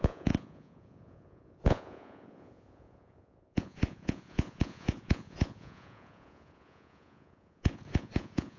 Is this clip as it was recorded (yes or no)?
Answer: no